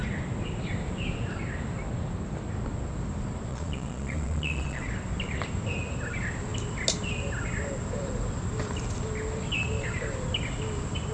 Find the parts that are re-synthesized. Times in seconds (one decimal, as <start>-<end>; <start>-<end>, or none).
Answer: 3.5-4.8